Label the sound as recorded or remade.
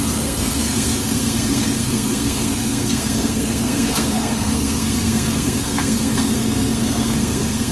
remade